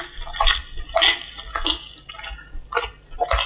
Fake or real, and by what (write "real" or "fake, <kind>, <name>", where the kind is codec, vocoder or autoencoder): real